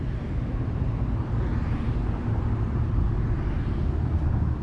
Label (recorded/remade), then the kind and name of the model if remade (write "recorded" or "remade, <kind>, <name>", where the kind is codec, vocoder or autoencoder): recorded